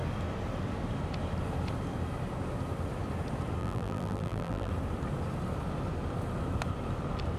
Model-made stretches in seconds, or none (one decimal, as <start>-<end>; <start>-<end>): 3.6-4.7